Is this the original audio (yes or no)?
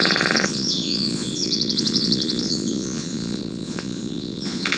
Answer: no